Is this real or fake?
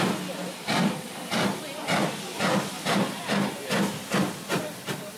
real